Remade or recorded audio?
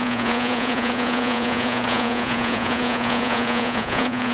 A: remade